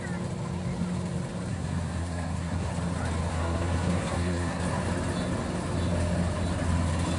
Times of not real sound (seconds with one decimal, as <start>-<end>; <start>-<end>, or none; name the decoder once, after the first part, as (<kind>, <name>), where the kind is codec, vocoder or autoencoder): 1.5-2.7 (codec, SNAC); 3.3-4.6